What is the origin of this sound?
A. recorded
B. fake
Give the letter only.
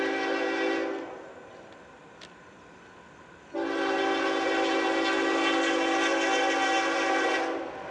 A